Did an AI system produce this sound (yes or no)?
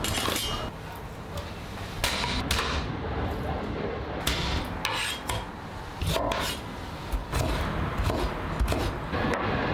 no